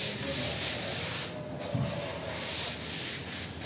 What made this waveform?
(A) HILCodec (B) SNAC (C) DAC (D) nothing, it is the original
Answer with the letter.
D